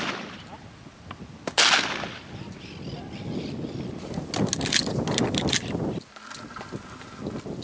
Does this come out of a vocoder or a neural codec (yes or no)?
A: no